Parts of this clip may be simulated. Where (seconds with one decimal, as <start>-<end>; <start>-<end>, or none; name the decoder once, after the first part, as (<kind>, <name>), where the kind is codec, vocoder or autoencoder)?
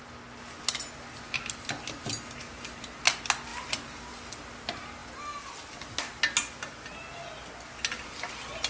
none